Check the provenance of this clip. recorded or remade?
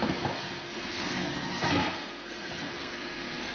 remade